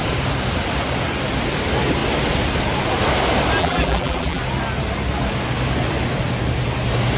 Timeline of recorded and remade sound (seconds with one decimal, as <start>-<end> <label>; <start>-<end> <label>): 0.0-3.6 recorded; 3.6-4.4 remade; 4.4-7.2 recorded